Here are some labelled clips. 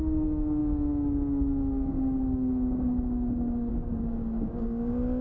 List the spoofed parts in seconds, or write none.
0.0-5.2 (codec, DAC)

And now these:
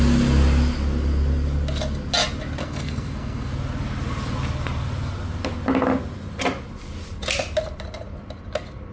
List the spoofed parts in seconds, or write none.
2.6-3.5 (codec, SNAC)

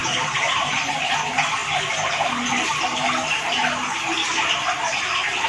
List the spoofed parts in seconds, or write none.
none

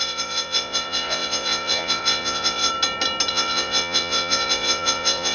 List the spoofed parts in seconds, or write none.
0.0-2.7 (vocoder, Vocos); 3.3-5.3

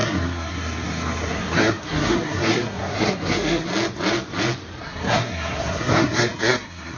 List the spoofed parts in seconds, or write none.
0.0-3.7 (codec, SNAC); 4.8-7.0

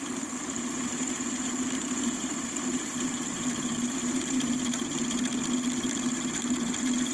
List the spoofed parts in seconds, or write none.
0.0-5.3 (vocoder, BigVGAN v2); 6.1-7.1

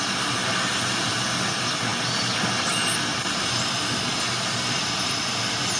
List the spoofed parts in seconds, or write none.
none

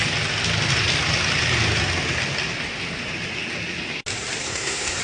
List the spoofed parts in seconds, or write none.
4.4-5.0 (codec, SNAC)